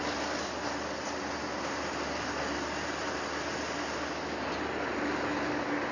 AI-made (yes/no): no